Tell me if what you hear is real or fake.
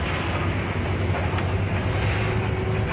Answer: real